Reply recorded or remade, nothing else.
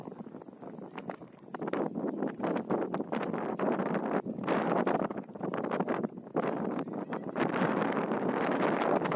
recorded